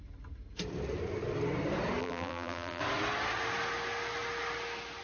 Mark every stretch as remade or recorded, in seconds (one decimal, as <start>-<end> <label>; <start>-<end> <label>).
0.0-2.0 recorded; 2.0-2.8 remade; 2.8-5.0 recorded